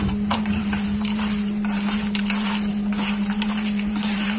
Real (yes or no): no